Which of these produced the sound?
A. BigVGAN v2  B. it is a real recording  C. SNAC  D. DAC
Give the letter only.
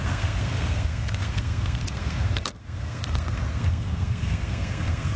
C